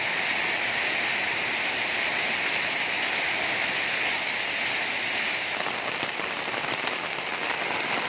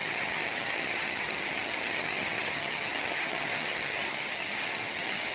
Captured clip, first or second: first